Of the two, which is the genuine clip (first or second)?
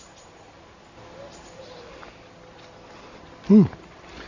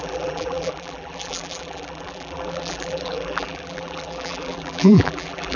first